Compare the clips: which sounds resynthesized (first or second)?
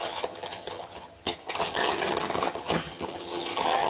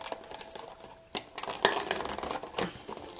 first